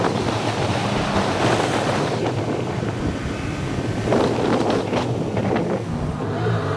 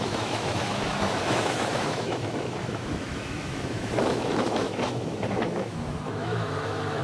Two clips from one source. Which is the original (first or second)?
first